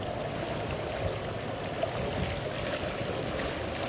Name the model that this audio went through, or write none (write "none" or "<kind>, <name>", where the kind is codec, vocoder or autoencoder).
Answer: none